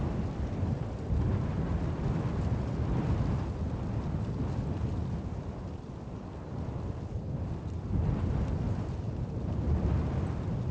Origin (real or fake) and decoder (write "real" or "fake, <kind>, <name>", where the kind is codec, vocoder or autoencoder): real